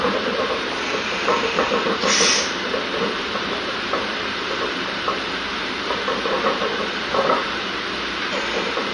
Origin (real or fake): fake